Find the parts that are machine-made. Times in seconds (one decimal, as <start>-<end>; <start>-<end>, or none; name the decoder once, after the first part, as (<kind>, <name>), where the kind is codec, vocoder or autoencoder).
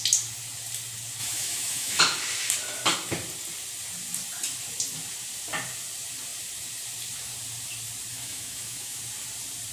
1.2-2.0 (autoencoder, DAC-VAE); 8.1-9.0